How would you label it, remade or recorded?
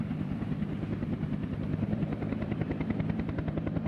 remade